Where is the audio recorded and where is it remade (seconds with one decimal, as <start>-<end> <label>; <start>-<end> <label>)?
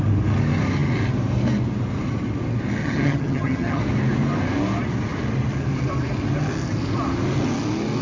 0.0-2.8 recorded; 2.8-3.8 remade; 3.8-8.0 recorded